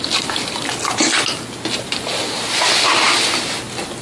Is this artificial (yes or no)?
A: no